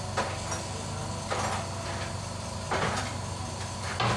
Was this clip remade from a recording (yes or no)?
no